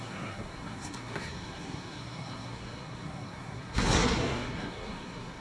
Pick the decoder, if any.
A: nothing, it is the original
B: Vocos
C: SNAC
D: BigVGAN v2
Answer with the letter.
C